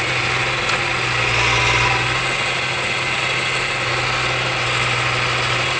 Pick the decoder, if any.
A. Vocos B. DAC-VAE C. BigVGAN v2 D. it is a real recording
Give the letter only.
D